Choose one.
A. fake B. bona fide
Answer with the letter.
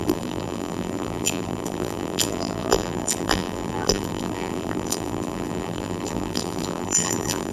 A